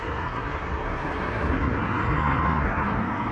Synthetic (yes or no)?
yes